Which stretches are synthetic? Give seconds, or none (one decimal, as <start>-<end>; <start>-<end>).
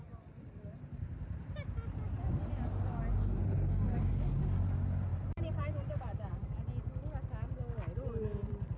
3.4-4.1; 5.1-6.5